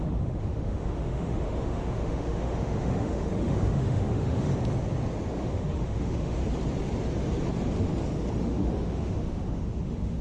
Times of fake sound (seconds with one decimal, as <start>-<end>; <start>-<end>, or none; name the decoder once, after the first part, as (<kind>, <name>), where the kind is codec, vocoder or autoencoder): 0.0-4.5 (autoencoder, DAC-VAE); 5.3-6.4; 8.4-10.2